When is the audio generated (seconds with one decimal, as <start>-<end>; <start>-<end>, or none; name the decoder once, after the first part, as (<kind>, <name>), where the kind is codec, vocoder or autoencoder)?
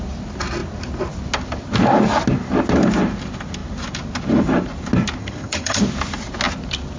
5.2-5.8 (vocoder, HiFi-GAN)